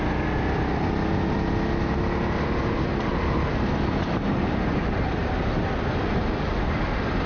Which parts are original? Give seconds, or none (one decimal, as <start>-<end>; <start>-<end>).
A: 0.0-7.3